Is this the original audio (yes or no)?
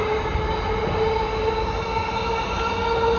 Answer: yes